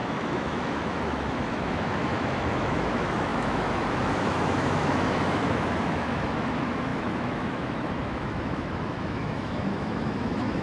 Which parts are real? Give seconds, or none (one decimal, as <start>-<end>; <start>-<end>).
none